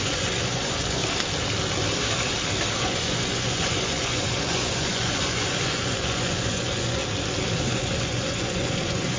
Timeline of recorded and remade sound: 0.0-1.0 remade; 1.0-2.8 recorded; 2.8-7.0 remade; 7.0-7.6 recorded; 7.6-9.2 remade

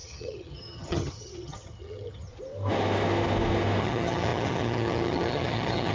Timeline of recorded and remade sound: 0.0-2.3 remade; 2.3-3.8 recorded; 3.8-5.9 remade

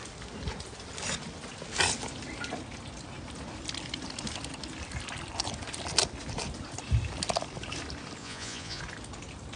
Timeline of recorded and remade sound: 0.0-8.2 recorded; 8.2-8.8 remade; 8.8-9.6 recorded

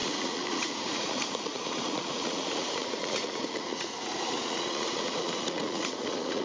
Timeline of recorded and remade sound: 0.0-6.4 remade

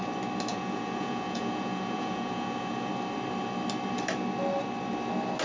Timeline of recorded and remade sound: 0.0-0.5 recorded; 0.5-2.9 remade; 2.9-5.4 recorded

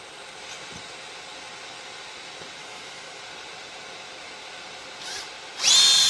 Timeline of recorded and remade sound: 0.0-2.6 recorded; 2.6-3.2 remade; 3.2-6.1 recorded